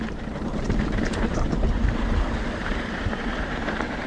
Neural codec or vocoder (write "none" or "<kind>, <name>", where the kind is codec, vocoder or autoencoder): vocoder, BigVGAN v2